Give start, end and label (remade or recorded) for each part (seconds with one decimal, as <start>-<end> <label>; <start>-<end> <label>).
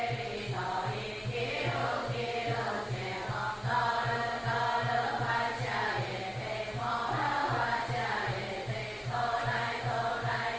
0.0-10.6 recorded